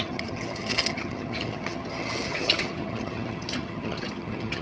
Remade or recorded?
remade